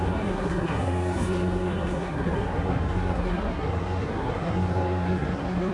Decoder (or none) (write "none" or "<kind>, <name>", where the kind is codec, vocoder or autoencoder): codec, SNAC